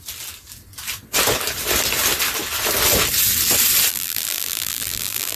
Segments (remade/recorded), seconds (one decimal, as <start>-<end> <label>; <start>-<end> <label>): 0.0-3.9 recorded; 3.9-5.4 remade